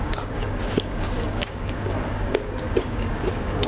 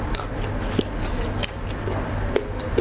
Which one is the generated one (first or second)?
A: first